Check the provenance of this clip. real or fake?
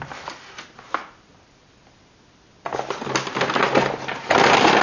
real